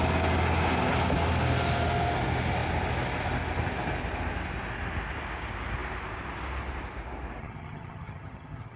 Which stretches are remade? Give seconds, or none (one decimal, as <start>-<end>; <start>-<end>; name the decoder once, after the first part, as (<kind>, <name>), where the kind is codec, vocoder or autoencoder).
7.4-8.8 (vocoder, HiFi-GAN)